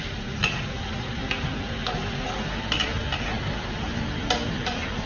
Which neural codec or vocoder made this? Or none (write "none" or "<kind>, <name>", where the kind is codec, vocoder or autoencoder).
none